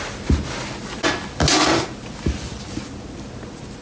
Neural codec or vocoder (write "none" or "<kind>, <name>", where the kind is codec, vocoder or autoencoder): none